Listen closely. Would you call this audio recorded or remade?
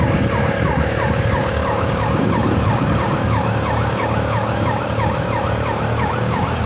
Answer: remade